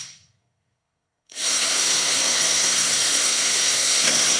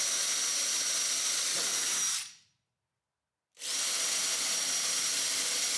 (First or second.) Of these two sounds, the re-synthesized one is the first